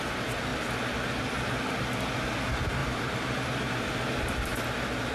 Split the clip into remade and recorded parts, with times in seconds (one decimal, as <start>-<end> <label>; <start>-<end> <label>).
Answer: 0.0-0.5 remade; 0.5-1.2 recorded; 1.2-4.5 remade; 4.5-5.1 recorded